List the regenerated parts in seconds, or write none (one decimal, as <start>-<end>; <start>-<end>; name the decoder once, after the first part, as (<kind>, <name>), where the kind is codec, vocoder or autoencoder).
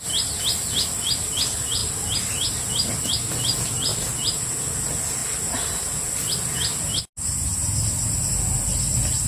1.8-2.3 (vocoder, BigVGAN v2); 3.9-4.4